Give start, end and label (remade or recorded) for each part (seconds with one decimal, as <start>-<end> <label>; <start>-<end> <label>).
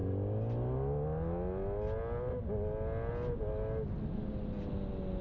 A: 0.0-5.2 recorded